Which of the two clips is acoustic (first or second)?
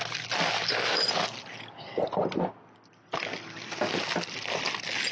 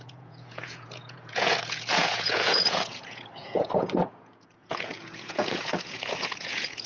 first